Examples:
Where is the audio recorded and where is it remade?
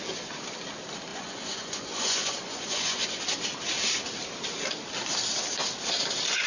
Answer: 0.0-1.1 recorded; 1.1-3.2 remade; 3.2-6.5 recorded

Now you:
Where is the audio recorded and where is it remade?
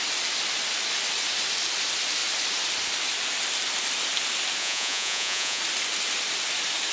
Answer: 0.0-4.6 recorded; 4.6-5.6 remade; 5.6-6.9 recorded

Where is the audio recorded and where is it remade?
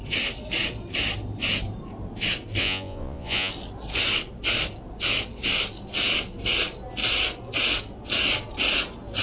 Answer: 0.0-2.6 recorded; 2.6-3.5 remade; 3.5-9.2 recorded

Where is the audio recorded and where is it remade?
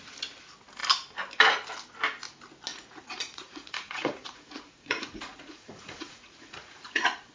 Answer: 0.0-2.7 recorded; 2.7-7.3 remade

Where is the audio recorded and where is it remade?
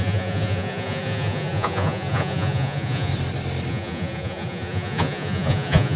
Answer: 0.0-3.1 remade; 3.1-3.7 recorded; 3.7-6.0 remade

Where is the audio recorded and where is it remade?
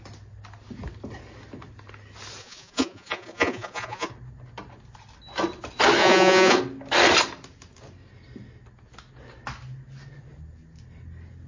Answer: 0.0-2.4 recorded; 2.4-4.1 remade; 4.1-6.0 recorded; 6.0-6.6 remade; 6.6-11.5 recorded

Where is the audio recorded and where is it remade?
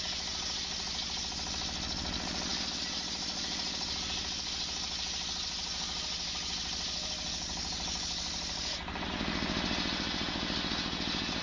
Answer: 0.0-11.4 recorded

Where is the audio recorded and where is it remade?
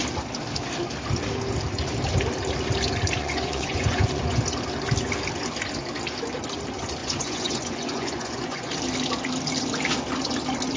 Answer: 0.0-3.2 recorded; 3.2-4.4 remade; 4.4-7.0 recorded; 7.0-8.7 remade; 8.7-10.8 recorded